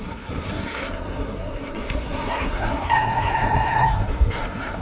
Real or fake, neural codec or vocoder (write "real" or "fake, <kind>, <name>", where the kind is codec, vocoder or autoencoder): fake, codec, SNAC